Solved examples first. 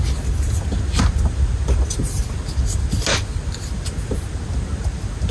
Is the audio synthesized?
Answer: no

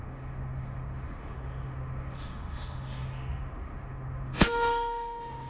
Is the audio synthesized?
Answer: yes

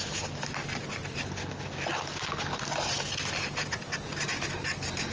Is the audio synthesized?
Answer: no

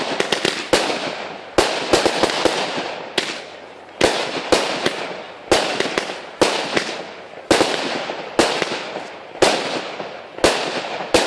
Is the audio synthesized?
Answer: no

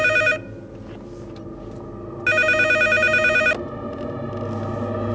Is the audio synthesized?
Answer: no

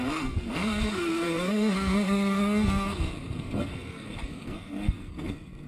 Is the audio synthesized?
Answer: yes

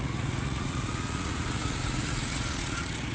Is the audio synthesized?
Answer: yes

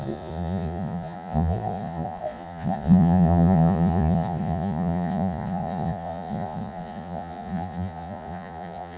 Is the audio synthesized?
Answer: yes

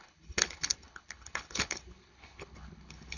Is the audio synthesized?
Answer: yes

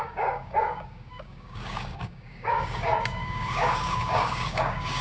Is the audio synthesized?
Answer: yes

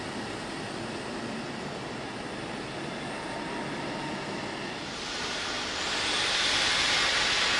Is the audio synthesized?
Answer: no